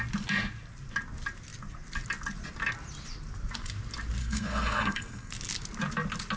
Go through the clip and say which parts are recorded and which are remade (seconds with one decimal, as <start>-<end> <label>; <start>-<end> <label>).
0.0-4.2 recorded; 4.2-5.3 remade; 5.3-6.4 recorded